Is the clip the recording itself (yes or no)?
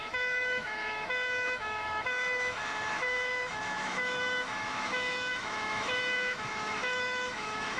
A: no